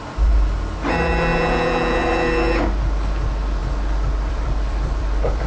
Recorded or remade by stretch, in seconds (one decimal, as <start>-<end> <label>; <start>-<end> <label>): 0.0-3.6 recorded; 3.6-5.5 remade